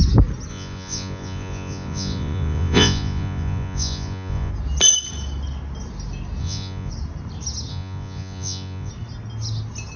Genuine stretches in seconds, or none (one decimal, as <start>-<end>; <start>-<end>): 0.0-0.5; 4.5-6.4; 6.9-7.7; 8.9-10.0